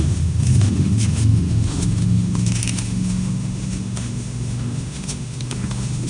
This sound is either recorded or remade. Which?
remade